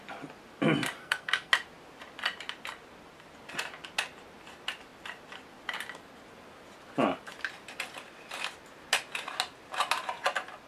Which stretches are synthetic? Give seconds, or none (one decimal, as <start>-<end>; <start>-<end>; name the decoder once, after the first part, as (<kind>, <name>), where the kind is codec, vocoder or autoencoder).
1.0-1.5 (codec, SNAC)